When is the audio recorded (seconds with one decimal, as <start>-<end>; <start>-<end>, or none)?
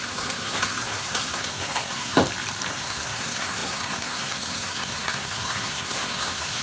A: 2.2-2.7